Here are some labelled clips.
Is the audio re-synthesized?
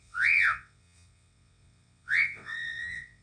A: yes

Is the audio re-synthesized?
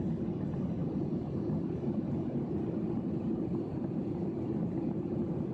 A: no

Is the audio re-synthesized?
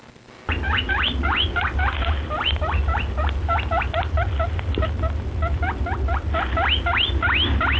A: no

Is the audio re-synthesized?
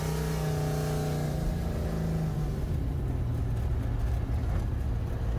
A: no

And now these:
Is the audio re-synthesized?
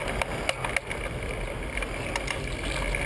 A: no